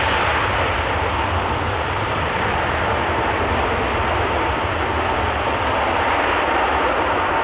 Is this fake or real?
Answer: real